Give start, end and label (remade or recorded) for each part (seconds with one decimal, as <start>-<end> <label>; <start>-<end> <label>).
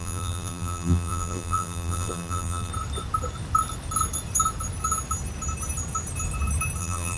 0.0-2.7 remade; 2.7-6.8 recorded; 6.8-7.2 remade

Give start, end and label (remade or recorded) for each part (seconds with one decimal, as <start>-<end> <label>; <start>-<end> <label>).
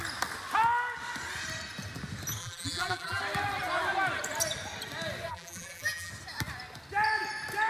0.0-2.4 recorded; 2.4-3.2 remade; 3.2-5.3 recorded; 5.3-6.1 remade; 6.1-7.7 recorded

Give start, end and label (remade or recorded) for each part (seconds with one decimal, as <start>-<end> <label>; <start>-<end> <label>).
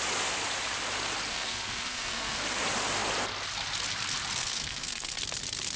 0.0-1.3 recorded; 1.3-2.4 remade; 2.4-4.4 recorded; 4.4-5.2 remade; 5.2-5.8 recorded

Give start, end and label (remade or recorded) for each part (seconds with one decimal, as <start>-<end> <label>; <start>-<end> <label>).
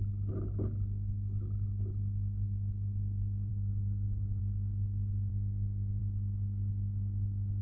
0.0-5.3 remade; 5.3-6.0 recorded; 6.0-7.6 remade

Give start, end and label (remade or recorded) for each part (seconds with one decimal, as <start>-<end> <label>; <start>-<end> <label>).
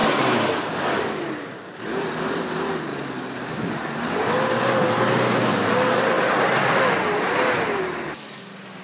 0.0-8.8 recorded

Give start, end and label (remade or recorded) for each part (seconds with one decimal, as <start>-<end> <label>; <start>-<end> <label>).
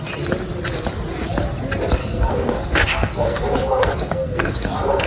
0.0-2.0 recorded; 2.0-5.1 remade